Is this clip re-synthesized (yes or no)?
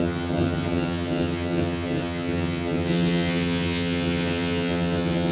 yes